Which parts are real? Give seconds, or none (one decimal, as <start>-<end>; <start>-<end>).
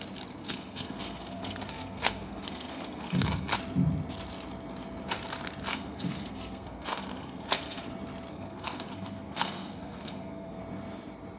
0.0-0.4; 3.5-5.7; 7.9-8.3; 10.6-11.4